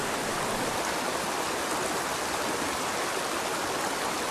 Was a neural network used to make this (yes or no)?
no